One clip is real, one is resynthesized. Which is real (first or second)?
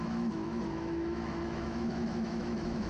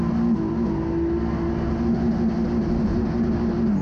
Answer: second